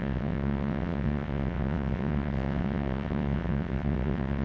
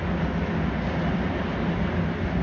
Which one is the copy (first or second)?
first